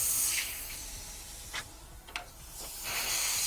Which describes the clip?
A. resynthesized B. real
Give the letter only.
A